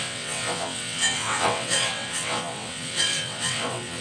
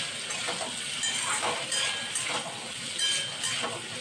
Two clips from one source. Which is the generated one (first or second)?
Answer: first